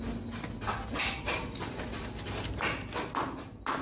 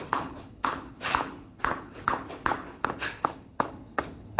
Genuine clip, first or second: first